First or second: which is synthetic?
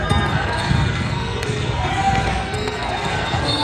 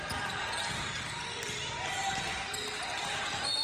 first